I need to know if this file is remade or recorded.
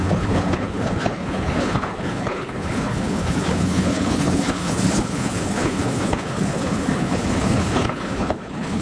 remade